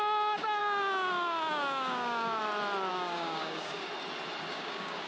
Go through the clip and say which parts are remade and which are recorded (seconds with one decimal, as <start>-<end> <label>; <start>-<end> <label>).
0.0-0.6 recorded; 0.6-2.4 remade; 2.4-2.9 recorded; 2.9-3.9 remade; 3.9-4.5 recorded; 4.5-5.1 remade